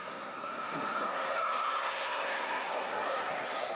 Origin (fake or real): fake